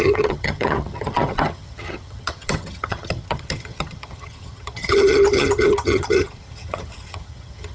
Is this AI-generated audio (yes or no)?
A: yes